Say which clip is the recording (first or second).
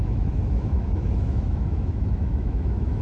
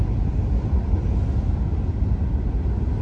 second